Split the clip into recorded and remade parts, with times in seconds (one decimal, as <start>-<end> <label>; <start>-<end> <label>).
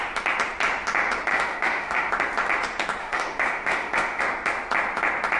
0.0-1.3 recorded; 1.3-2.1 remade; 2.1-3.0 recorded; 3.0-4.2 remade; 4.2-5.4 recorded